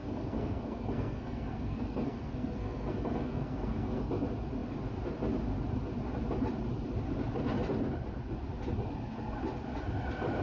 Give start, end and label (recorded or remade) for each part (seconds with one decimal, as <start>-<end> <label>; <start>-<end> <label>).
0.0-4.1 remade; 4.1-10.4 recorded